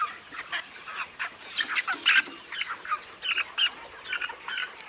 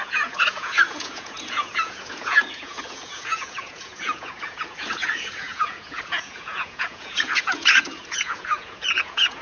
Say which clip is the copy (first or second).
second